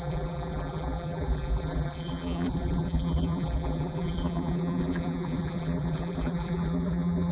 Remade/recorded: remade